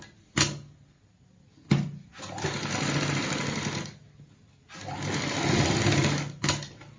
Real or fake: real